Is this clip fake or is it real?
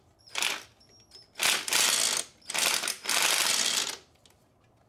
real